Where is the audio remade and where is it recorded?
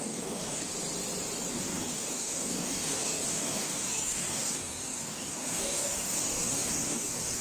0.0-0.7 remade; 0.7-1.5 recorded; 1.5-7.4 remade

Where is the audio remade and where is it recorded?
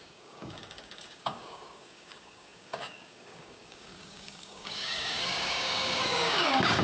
0.0-6.8 remade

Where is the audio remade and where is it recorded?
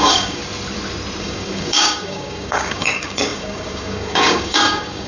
0.0-0.4 remade; 0.4-1.2 recorded; 1.2-5.1 remade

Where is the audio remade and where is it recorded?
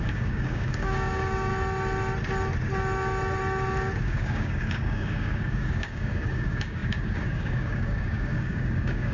0.0-1.5 remade; 1.5-4.0 recorded; 4.0-9.1 remade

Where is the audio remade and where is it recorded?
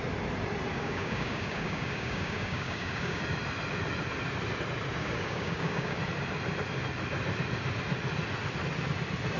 0.0-0.7 recorded; 0.7-3.2 remade; 3.2-5.0 recorded; 5.0-6.0 remade; 6.0-9.4 recorded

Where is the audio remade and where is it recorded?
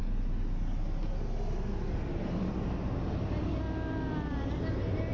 0.0-5.1 recorded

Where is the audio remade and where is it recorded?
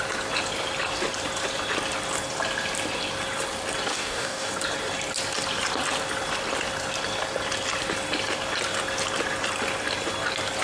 0.0-3.9 recorded; 3.9-4.5 remade; 4.5-10.6 recorded